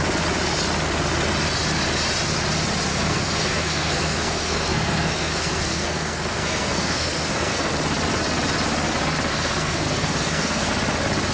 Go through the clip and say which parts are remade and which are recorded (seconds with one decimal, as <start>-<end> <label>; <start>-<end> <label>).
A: 0.0-2.9 recorded; 2.9-7.7 remade; 7.7-9.3 recorded; 9.3-10.7 remade; 10.7-11.3 recorded